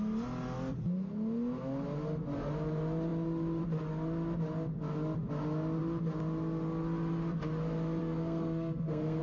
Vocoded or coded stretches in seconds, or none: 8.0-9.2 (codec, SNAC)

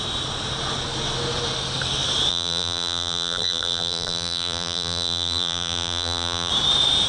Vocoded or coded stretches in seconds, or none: 2.3-6.5 (vocoder, BigVGAN v2)

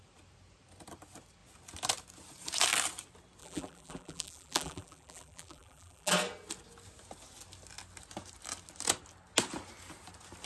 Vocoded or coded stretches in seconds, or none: 3.4-6.1 (vocoder, BigVGAN v2)

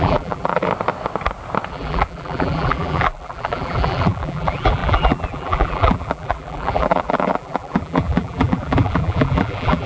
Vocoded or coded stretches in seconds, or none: 0.0-0.7 (vocoder, BigVGAN v2); 1.7-9.9